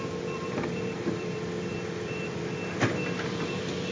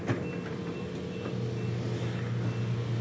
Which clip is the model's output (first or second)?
first